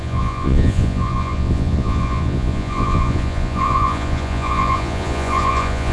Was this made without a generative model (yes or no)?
no